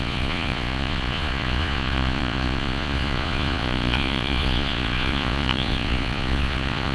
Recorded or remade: remade